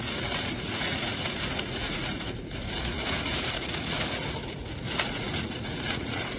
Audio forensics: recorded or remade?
remade